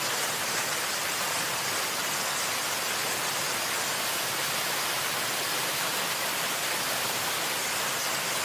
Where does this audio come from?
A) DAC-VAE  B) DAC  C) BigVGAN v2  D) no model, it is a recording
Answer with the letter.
D